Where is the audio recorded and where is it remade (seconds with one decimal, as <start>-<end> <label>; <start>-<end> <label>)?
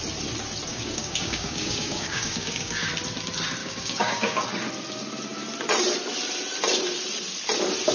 0.0-0.7 recorded; 0.7-2.9 remade; 2.9-3.6 recorded; 3.6-4.4 remade; 4.4-7.9 recorded